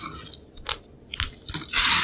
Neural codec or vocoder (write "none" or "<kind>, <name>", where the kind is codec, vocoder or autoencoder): none